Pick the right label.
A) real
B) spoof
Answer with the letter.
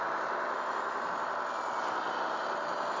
A